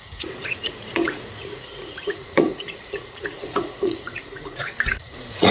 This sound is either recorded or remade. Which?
remade